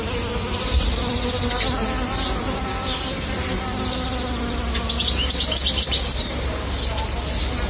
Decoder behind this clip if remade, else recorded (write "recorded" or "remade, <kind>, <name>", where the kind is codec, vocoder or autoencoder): recorded